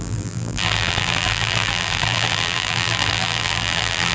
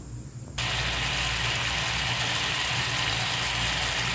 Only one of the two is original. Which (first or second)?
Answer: second